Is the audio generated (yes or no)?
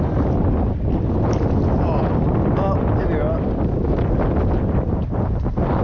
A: no